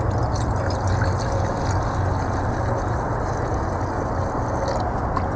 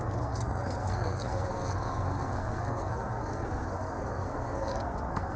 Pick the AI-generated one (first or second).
second